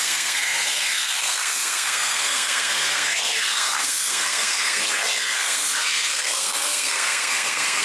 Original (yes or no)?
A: no